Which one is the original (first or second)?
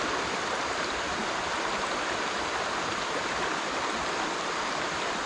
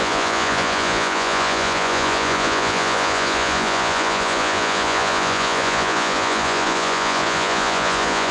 first